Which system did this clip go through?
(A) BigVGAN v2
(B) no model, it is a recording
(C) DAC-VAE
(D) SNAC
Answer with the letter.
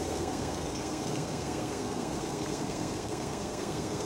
D